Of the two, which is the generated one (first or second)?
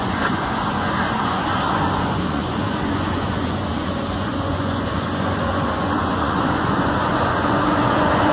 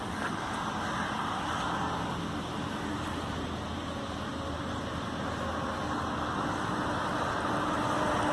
first